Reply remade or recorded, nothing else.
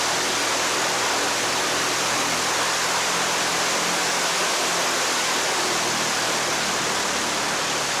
recorded